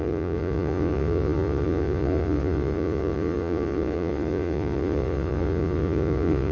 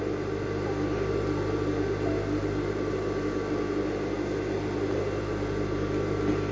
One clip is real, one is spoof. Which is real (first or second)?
second